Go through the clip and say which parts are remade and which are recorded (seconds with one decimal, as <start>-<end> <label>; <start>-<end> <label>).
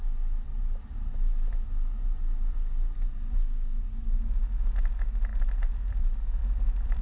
0.0-5.3 recorded; 5.3-6.0 remade; 6.0-6.4 recorded; 6.4-7.0 remade